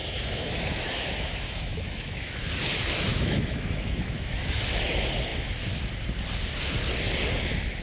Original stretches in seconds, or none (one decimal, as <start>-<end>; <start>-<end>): 2.4-3.1; 4.6-7.8